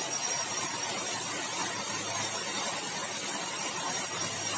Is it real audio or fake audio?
real